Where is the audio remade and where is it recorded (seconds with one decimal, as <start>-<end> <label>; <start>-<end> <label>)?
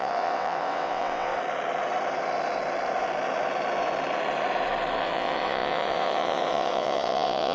0.0-1.3 remade; 1.3-5.0 recorded; 5.0-7.5 remade